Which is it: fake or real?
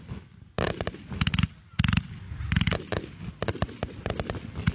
real